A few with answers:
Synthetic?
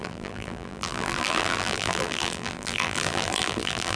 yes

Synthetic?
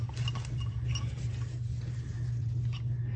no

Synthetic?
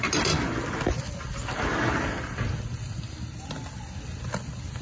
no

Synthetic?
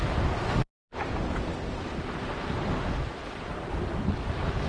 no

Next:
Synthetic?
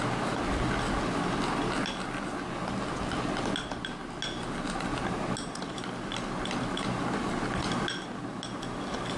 no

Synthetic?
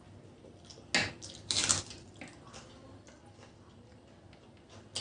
no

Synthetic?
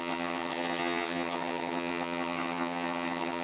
yes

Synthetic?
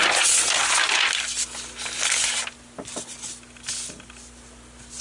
no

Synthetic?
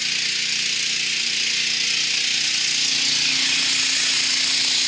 no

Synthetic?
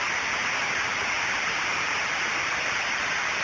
no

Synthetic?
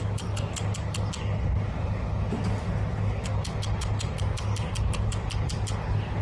no